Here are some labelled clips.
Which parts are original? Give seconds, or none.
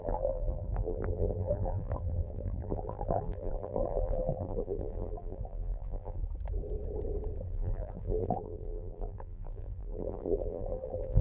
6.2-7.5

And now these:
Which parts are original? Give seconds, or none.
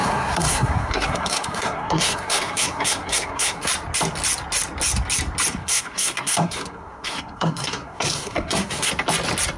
3.7-5.6; 8.9-9.6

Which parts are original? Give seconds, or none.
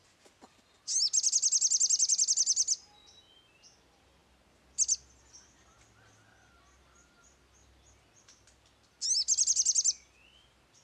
0.0-10.8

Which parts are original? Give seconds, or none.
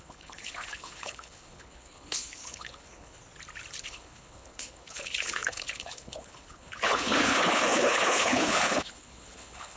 3.2-3.8